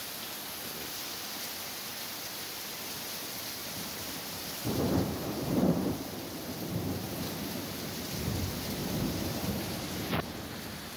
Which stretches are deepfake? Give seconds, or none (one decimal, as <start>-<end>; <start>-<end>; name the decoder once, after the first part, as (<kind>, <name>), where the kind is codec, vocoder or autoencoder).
3.6-6.1 (vocoder, BigVGAN v2); 8.8-9.5